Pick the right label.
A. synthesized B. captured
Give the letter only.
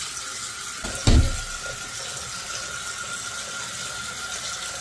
B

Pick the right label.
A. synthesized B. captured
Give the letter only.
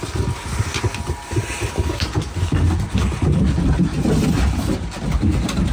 B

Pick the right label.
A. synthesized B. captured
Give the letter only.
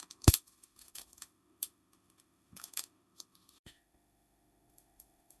A